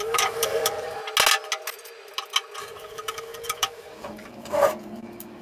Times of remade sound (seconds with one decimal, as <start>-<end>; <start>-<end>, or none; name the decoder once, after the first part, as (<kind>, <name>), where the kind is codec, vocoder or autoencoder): 0.0-1.0 (codec, DAC); 2.6-5.4